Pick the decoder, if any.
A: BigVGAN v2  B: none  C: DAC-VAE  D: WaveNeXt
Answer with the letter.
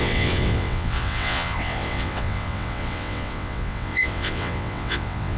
D